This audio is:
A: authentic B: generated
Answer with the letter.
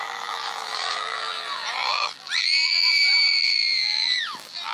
B